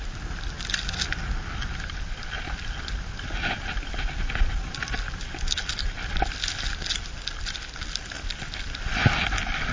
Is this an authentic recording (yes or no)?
yes